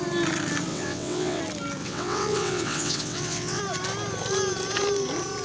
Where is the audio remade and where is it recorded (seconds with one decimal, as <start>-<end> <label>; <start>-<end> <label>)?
0.0-0.7 recorded; 0.7-1.4 remade; 1.4-1.8 recorded; 1.8-3.6 remade; 3.6-5.4 recorded